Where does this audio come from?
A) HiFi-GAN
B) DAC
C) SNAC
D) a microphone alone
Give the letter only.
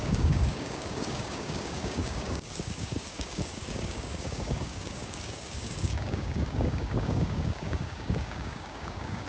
B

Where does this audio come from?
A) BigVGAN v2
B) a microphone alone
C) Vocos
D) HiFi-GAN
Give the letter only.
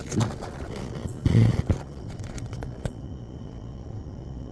C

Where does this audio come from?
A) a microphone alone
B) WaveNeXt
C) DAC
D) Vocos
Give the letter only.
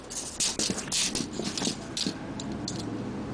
A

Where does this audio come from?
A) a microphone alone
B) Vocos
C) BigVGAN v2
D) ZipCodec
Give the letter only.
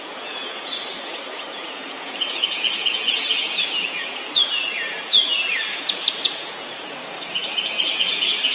B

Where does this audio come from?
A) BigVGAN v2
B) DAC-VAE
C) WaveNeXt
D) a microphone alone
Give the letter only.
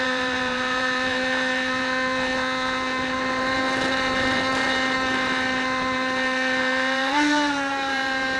A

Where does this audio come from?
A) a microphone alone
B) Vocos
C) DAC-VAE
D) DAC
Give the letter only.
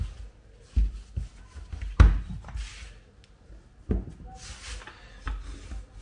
A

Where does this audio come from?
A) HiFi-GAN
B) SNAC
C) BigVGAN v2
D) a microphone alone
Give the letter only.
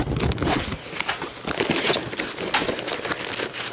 D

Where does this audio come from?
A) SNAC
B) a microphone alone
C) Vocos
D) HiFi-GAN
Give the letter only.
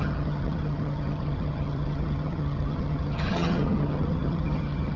D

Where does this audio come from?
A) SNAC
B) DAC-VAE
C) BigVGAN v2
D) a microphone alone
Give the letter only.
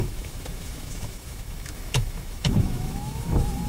B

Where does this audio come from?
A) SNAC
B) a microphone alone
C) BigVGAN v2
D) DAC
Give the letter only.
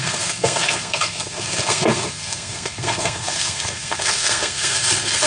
A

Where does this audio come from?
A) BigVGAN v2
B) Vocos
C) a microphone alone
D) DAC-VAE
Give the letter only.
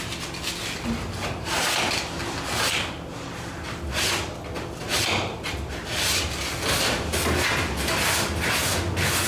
C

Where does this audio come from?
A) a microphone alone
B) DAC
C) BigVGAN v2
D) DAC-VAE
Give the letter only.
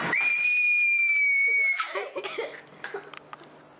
A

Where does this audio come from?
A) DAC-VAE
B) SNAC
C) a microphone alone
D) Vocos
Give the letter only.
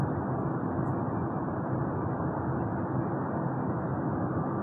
C